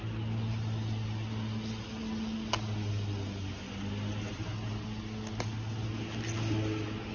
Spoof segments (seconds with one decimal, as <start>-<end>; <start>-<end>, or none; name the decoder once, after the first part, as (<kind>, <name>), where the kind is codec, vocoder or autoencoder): none